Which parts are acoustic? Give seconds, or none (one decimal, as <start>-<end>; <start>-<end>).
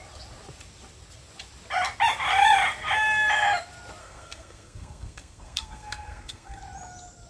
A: 0.0-4.0; 6.6-7.3